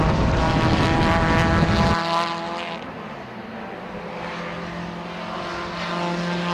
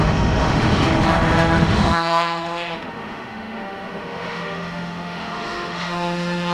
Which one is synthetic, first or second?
second